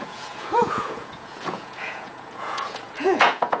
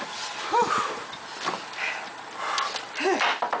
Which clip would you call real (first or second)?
second